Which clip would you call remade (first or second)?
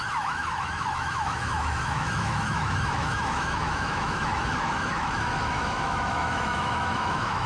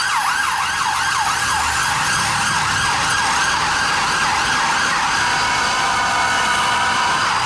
first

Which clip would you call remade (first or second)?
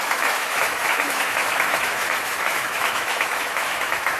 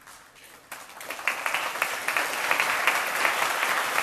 first